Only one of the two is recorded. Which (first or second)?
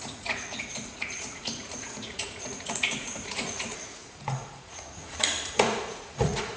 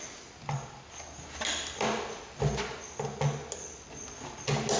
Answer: second